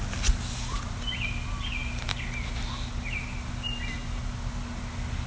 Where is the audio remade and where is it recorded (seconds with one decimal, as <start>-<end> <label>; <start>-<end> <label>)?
0.0-5.3 recorded